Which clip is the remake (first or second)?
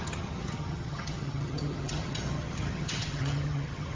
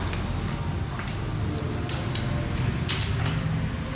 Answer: first